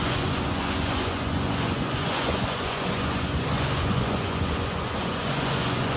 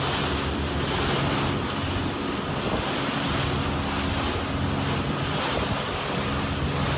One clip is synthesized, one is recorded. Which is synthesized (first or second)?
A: first